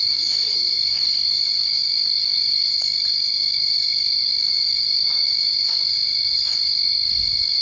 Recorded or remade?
remade